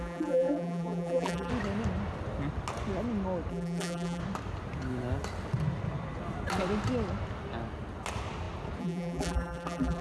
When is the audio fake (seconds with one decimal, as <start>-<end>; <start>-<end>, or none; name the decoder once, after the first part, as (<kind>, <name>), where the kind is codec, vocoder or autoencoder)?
0.0-1.5 (vocoder, BigVGAN v2); 3.5-4.2; 8.8-10.0